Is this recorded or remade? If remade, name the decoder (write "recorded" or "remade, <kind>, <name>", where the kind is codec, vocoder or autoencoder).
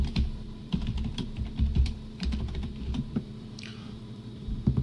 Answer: remade, vocoder, BigVGAN v2